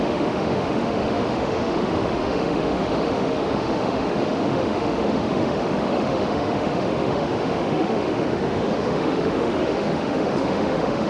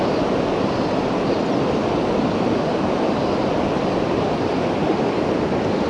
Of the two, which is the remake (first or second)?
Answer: first